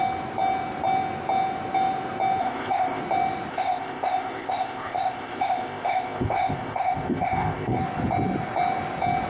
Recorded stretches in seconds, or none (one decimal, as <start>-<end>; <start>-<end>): 0.0-2.4; 3.0-3.5; 7.8-9.3